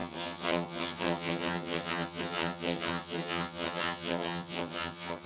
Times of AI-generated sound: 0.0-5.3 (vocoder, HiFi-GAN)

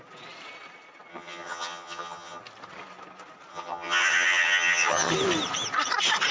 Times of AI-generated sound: 1.1-2.4 (vocoder, HiFi-GAN); 3.5-5.1

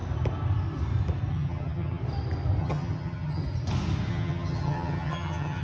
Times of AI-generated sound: 1.3-2.0 (vocoder, HiFi-GAN); 2.6-3.4; 4.1-5.6

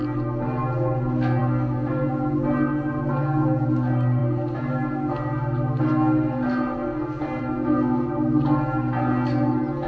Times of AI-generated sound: none

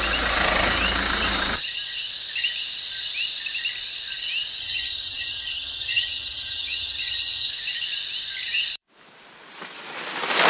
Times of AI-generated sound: 4.6-7.5 (vocoder, HiFi-GAN)

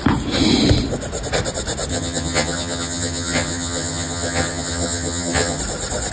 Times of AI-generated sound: 1.9-5.6 (vocoder, HiFi-GAN)

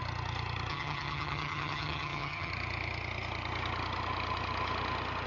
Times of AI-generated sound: 0.7-2.5 (vocoder, HiFi-GAN)

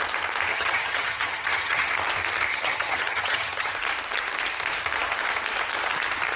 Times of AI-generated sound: 0.5-1.9 (vocoder, HiFi-GAN); 2.5-3.7